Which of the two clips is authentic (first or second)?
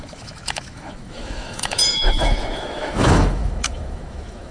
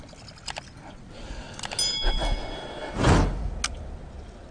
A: second